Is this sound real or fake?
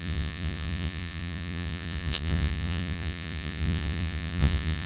fake